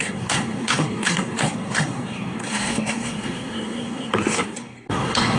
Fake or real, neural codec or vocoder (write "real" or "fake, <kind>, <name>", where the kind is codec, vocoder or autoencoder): fake, codec, SNAC